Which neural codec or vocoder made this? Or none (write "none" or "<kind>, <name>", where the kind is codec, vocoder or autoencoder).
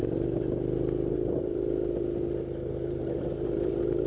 none